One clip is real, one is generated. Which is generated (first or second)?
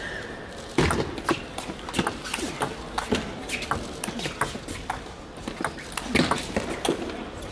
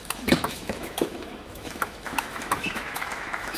second